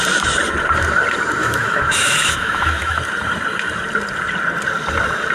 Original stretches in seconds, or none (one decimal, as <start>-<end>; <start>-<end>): 0.0-1.4; 3.0-5.3